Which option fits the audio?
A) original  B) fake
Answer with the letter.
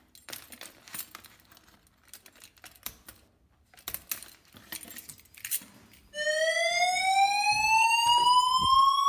A